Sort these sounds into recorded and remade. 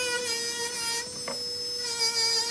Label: recorded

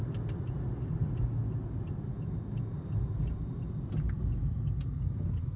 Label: recorded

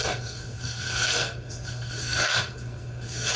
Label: remade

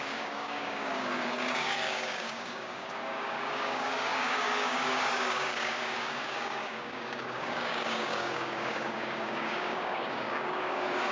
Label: remade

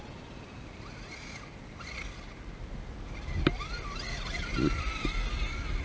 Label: recorded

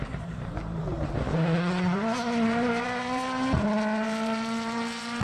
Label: remade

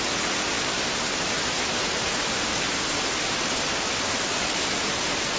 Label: recorded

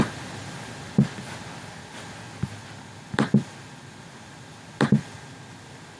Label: recorded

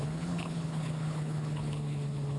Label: remade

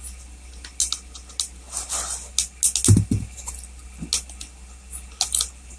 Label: recorded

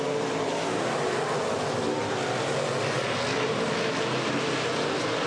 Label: recorded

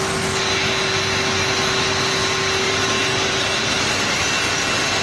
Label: recorded